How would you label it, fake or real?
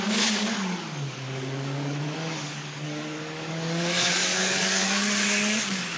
fake